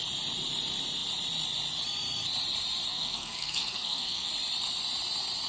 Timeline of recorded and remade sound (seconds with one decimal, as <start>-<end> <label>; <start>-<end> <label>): 0.0-2.9 recorded; 2.9-4.3 remade; 4.3-5.5 recorded